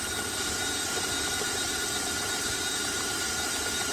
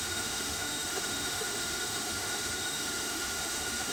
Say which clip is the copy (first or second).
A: second